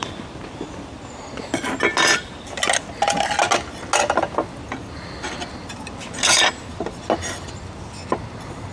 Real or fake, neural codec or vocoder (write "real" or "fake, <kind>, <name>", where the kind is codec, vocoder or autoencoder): real